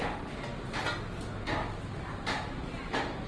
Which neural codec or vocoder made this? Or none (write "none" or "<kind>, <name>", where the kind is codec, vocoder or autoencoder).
none